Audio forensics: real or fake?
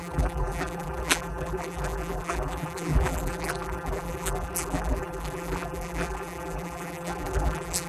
fake